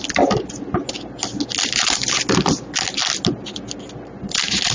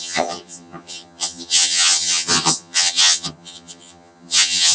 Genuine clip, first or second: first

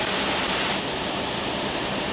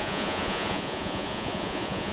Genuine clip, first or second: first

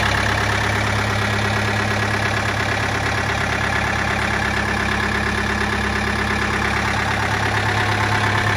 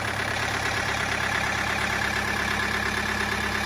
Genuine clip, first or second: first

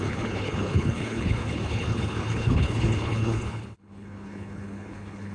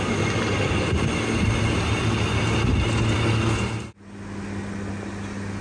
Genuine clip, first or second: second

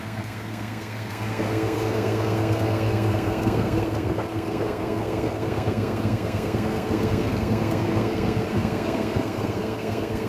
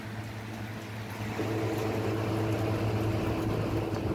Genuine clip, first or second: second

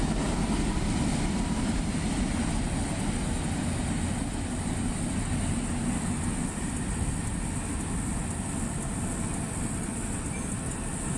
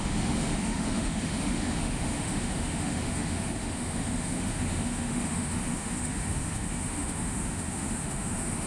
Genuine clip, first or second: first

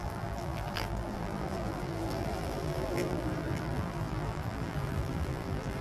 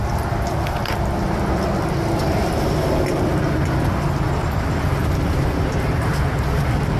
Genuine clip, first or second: second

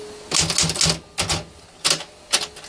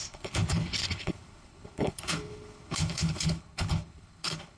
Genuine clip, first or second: first